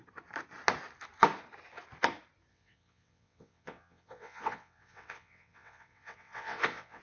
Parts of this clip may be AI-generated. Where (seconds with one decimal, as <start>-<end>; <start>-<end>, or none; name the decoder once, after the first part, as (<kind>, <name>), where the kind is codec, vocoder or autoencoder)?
2.5-7.0 (vocoder, WaveNeXt)